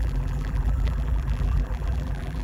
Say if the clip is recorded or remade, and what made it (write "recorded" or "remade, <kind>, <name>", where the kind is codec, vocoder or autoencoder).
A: remade, vocoder, BigVGAN v2